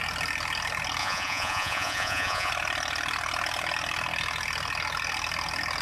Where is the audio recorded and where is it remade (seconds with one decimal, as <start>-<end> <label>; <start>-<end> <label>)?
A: 0.0-1.0 recorded; 1.0-2.5 remade; 2.5-5.8 recorded